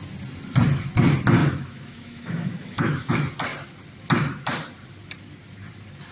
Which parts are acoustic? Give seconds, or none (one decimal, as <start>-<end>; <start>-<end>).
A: 0.0-1.4; 3.1-6.1

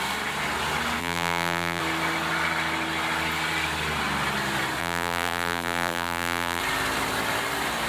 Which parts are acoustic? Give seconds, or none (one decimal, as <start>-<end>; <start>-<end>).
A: 0.0-1.0; 1.8-4.8; 6.6-7.9

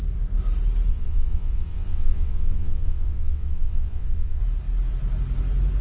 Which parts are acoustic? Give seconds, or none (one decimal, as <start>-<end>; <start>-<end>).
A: 0.0-0.9; 4.4-5.8

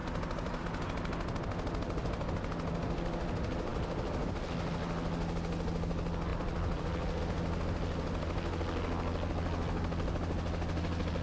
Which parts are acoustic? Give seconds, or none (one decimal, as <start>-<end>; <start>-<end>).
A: 0.6-6.3; 7.2-11.2